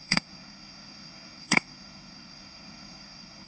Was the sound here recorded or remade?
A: remade